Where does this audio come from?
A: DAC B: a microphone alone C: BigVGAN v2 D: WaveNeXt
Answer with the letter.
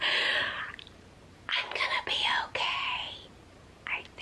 C